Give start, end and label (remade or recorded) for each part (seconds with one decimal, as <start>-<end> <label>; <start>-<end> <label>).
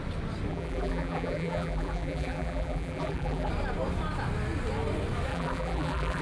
0.0-0.5 recorded; 0.5-3.5 remade; 3.5-5.3 recorded; 5.3-6.2 remade